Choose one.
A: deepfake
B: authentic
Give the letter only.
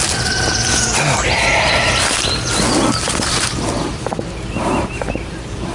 A